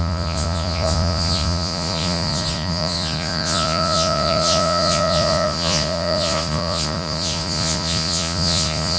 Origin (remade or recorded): remade